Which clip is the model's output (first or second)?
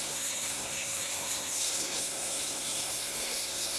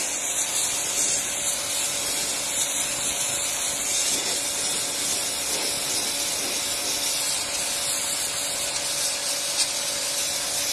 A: first